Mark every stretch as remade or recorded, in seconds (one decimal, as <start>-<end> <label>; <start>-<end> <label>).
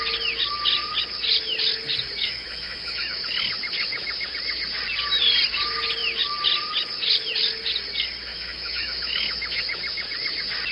0.0-2.2 recorded; 2.2-3.2 remade; 3.2-8.3 recorded; 8.3-9.6 remade; 9.6-10.7 recorded